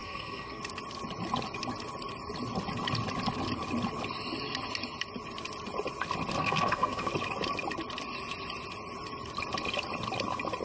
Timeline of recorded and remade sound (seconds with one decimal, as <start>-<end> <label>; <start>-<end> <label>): 0.0-0.6 remade; 0.6-6.4 recorded; 6.4-7.1 remade; 7.1-10.6 recorded